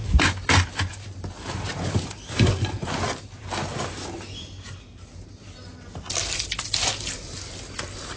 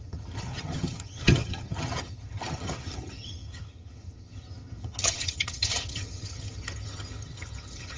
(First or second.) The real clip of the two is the first